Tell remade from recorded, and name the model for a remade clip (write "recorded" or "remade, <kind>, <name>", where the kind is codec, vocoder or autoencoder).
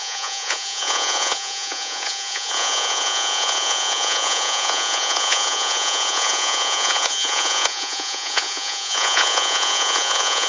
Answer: remade, vocoder, Vocos